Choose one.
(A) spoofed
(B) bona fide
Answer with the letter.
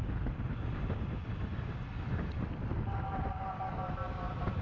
B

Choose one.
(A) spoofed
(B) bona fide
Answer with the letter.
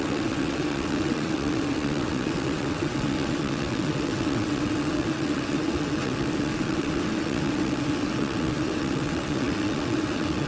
A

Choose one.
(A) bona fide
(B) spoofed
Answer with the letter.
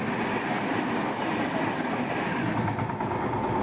A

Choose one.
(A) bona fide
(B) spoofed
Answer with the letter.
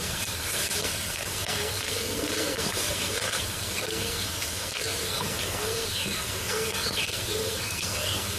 B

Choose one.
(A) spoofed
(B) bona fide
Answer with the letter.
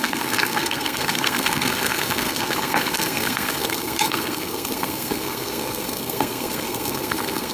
A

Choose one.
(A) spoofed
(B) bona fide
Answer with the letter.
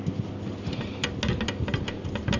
B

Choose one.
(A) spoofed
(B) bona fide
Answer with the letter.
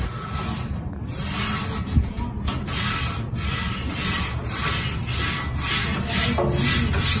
B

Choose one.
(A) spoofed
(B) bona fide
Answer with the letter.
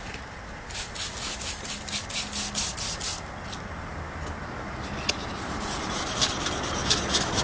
B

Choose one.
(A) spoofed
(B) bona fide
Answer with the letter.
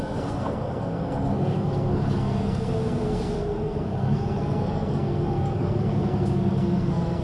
A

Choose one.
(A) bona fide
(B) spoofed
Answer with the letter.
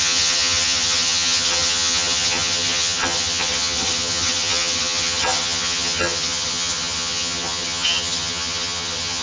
B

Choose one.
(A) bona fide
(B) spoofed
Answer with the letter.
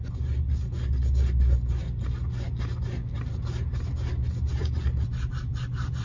A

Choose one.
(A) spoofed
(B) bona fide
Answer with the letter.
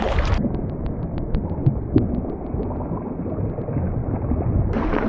B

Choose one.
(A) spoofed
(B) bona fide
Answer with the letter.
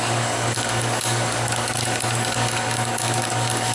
A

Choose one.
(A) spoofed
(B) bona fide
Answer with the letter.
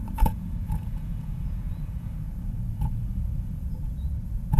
A